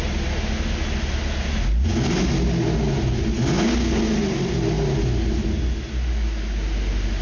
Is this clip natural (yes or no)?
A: yes